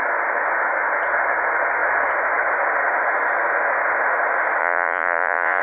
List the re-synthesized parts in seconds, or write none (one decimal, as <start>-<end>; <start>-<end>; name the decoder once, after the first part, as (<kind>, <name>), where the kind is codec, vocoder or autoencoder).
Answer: 4.6-5.6 (vocoder, Vocos)